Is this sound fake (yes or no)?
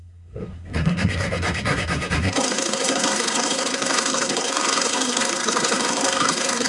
yes